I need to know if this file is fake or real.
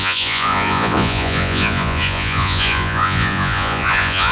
fake